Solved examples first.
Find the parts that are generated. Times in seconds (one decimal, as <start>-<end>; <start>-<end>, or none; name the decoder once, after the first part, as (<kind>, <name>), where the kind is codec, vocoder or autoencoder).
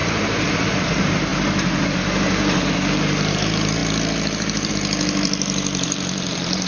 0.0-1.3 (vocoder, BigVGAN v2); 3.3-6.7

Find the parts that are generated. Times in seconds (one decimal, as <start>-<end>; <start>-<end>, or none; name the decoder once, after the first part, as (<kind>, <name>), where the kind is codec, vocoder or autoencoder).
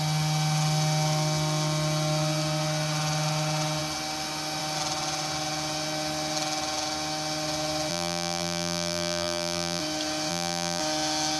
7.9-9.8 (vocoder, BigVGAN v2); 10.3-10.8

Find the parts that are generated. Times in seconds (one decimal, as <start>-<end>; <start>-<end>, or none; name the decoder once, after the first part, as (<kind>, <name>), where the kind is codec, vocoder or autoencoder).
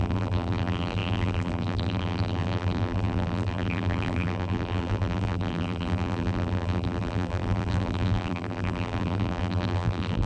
0.0-10.3 (vocoder, BigVGAN v2)